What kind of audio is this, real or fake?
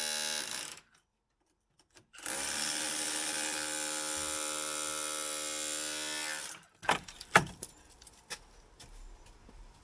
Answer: real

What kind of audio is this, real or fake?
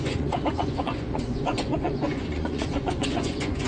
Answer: fake